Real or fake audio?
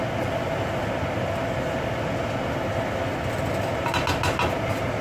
real